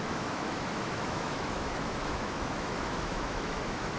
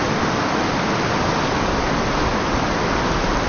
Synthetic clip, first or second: first